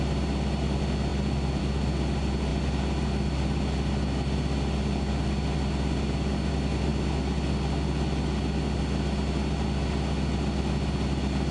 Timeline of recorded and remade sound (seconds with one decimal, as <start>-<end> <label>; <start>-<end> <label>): 0.0-11.5 recorded